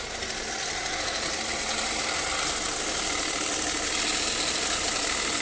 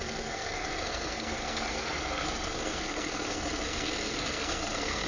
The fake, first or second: second